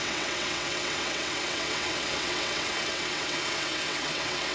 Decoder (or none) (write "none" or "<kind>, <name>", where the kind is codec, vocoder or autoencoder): vocoder, WaveNeXt